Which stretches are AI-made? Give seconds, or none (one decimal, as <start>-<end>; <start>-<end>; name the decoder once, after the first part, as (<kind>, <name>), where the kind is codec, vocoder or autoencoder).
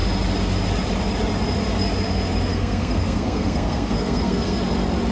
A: 2.5-4.6 (codec, SNAC)